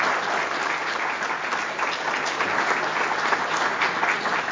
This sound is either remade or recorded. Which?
recorded